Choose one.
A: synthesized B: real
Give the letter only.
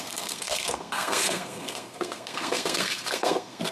A